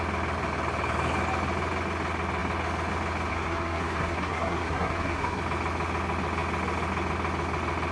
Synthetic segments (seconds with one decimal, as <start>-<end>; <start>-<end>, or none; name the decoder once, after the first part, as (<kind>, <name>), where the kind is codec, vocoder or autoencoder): 3.3-5.4 (codec, SNAC)